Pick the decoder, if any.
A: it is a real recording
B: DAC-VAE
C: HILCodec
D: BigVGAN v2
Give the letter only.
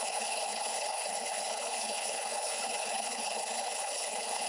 C